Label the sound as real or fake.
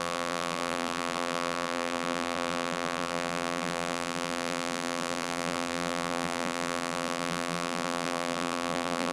fake